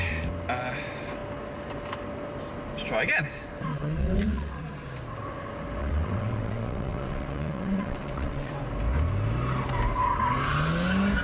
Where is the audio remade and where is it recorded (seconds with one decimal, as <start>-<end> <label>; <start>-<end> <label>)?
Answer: 0.0-3.7 recorded; 3.7-4.6 remade; 4.6-5.8 recorded; 5.8-8.5 remade; 8.5-11.2 recorded

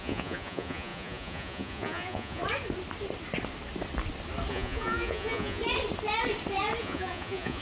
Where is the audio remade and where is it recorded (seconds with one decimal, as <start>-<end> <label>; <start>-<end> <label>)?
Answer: 0.0-2.4 remade; 2.4-4.5 recorded; 4.5-5.6 remade; 5.6-6.8 recorded; 6.8-7.6 remade